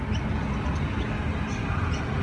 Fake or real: real